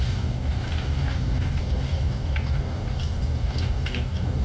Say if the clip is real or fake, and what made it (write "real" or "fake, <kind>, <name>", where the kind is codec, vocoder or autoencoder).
fake, codec, DAC